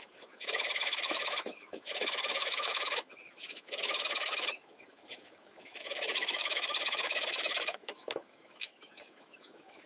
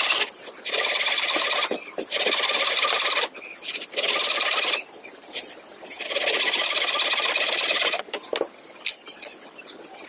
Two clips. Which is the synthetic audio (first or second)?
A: first